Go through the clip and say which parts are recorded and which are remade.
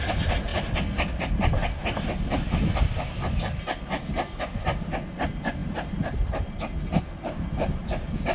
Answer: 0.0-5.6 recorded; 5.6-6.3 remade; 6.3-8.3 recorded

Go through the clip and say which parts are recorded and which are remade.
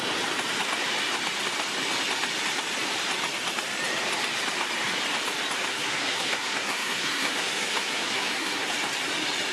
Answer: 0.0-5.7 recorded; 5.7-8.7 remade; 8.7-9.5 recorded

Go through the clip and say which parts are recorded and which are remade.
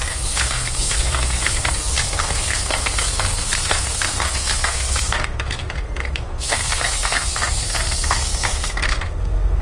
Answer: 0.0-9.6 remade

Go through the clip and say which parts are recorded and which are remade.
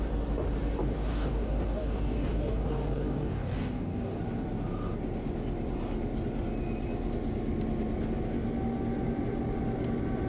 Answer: 0.0-0.8 recorded; 0.8-4.2 remade; 4.2-10.3 recorded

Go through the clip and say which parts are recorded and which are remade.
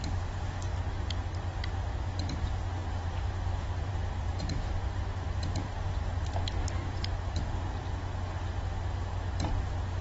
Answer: 0.0-2.8 recorded; 2.8-6.1 remade; 6.1-10.0 recorded